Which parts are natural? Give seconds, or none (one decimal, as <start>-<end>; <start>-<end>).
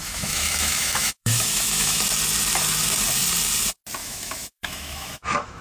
2.0-4.0